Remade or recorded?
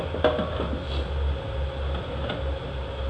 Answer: recorded